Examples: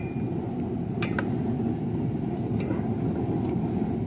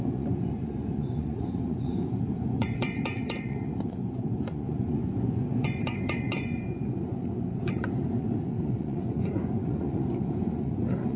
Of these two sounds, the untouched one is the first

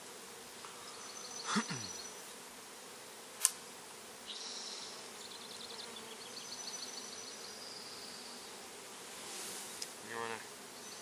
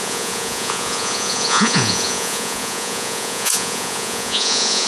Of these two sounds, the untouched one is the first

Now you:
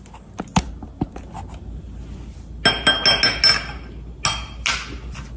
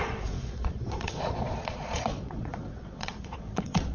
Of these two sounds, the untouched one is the first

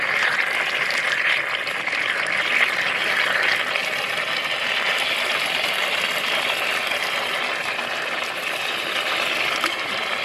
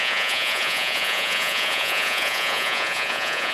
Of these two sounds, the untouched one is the first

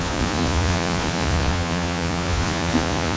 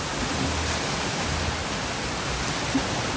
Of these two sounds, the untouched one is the second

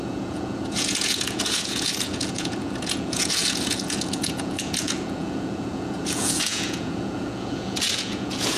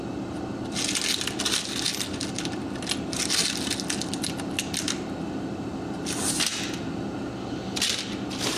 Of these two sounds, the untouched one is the second